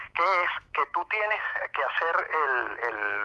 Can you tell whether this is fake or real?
fake